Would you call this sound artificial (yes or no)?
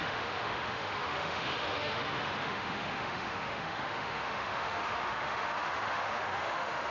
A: yes